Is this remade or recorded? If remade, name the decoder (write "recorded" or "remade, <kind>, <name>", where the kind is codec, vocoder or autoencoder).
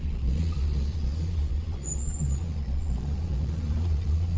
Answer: remade, vocoder, Vocos